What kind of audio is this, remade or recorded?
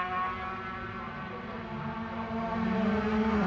recorded